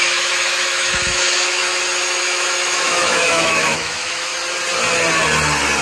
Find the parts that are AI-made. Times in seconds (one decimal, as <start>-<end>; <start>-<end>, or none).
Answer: 0.0-1.6; 2.2-4.3